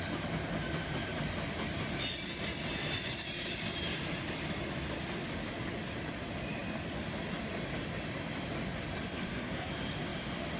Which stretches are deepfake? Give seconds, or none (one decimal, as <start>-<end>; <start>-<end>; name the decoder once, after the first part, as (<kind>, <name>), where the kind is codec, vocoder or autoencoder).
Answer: 9.1-9.7 (codec, SNAC)